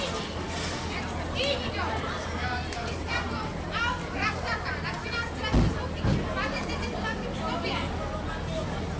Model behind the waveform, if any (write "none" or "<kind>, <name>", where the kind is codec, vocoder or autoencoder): none